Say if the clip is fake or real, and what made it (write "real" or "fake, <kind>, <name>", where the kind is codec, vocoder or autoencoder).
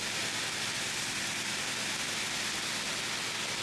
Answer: real